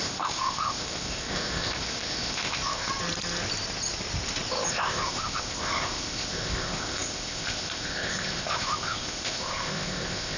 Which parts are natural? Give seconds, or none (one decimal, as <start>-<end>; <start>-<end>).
2.9-4.7